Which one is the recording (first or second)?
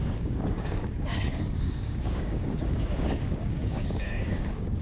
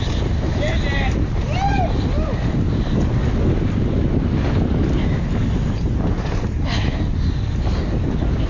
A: second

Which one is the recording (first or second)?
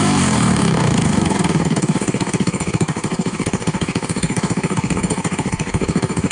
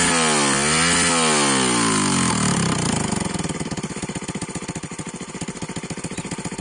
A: second